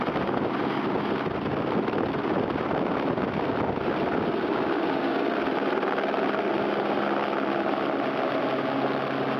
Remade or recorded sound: recorded